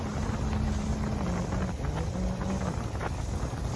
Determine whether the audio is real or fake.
real